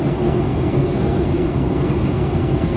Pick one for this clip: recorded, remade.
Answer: remade